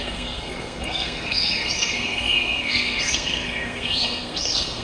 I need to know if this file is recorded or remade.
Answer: remade